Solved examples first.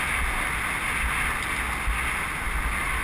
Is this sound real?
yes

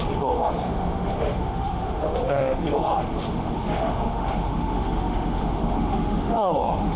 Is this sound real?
no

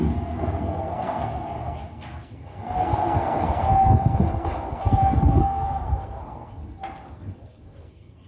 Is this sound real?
no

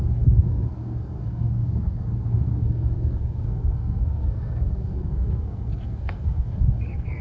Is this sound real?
no